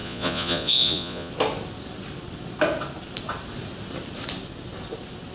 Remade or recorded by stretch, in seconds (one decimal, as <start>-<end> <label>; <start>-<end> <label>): 0.0-1.3 remade; 1.3-5.3 recorded